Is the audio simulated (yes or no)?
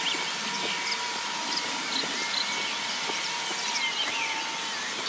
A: no